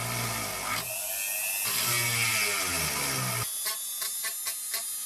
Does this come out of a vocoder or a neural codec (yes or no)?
no